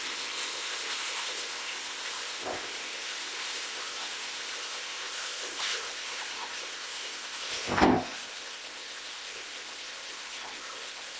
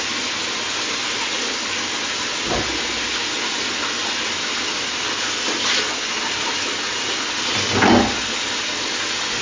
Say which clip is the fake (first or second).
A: first